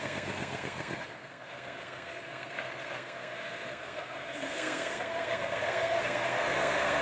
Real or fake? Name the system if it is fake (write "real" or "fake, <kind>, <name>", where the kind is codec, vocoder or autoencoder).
fake, codec, SNAC